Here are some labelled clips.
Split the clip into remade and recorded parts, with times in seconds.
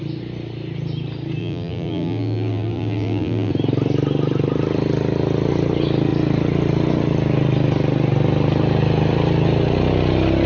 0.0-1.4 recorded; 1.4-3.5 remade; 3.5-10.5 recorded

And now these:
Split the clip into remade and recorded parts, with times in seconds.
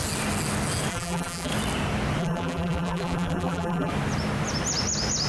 0.0-0.9 recorded; 0.9-1.5 remade; 1.5-2.2 recorded; 2.2-3.9 remade; 3.9-5.3 recorded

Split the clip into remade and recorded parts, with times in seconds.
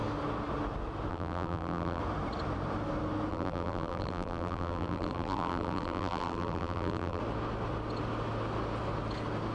0.0-1.1 recorded; 1.1-2.0 remade; 2.0-3.3 recorded; 3.3-7.2 remade; 7.2-9.5 recorded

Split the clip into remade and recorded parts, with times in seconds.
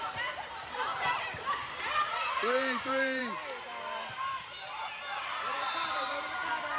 0.0-3.2 remade; 3.2-5.2 recorded; 5.2-6.8 remade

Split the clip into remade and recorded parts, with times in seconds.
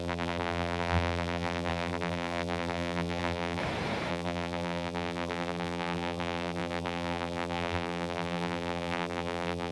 0.0-3.6 remade; 3.6-4.1 recorded; 4.1-9.7 remade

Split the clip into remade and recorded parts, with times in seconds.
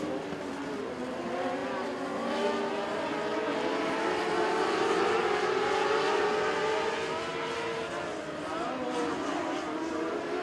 0.0-3.3 recorded; 3.3-5.0 remade; 5.0-10.4 recorded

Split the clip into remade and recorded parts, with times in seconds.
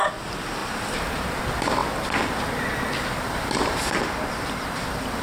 0.0-0.6 recorded; 0.6-1.4 remade; 1.4-5.2 recorded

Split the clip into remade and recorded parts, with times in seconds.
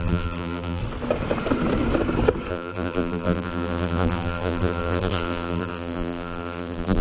0.0-0.8 remade; 0.8-2.5 recorded; 2.5-7.0 remade